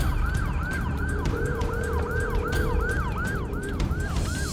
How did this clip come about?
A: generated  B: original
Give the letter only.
A